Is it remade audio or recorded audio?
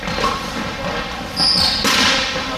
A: recorded